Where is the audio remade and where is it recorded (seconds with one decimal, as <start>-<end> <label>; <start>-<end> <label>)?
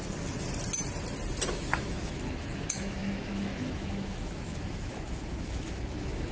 0.0-1.5 recorded; 1.5-6.3 remade